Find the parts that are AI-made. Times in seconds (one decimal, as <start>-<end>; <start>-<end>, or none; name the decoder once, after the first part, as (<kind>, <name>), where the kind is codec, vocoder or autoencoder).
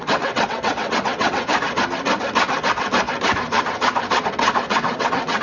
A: 0.0-1.5 (vocoder, WaveNeXt); 4.7-5.4